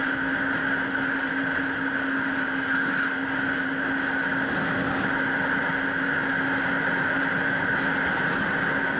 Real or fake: real